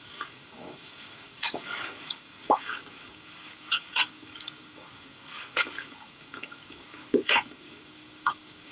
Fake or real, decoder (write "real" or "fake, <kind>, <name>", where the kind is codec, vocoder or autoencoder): fake, codec, DAC